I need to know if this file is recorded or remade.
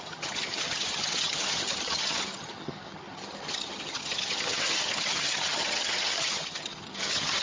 remade